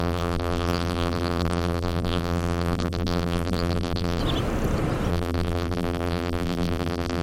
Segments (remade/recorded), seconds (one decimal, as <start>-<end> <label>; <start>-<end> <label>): 0.0-4.2 remade; 4.2-5.1 recorded; 5.1-7.2 remade